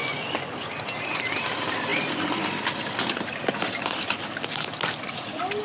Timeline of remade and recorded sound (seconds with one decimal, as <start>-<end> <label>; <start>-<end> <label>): 0.0-0.7 remade; 0.7-5.6 recorded